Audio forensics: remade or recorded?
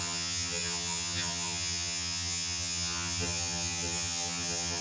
remade